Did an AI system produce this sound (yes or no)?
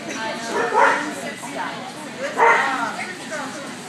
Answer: no